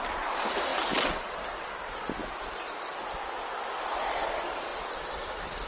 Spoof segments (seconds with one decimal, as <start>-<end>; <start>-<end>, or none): none